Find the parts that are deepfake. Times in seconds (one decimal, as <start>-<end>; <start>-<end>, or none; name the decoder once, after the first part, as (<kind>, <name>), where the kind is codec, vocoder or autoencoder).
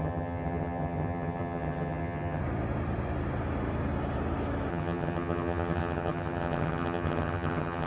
0.0-2.4 (vocoder, HiFi-GAN); 4.7-7.9